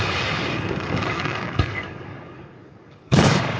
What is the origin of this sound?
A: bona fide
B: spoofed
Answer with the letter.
B